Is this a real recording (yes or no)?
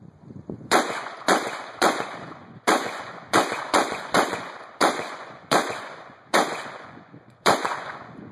no